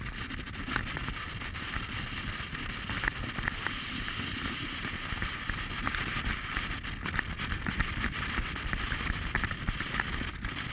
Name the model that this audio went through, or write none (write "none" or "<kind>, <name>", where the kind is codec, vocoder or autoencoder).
none